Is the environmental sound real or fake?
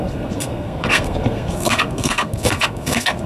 fake